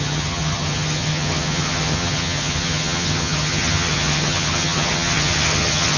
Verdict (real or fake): fake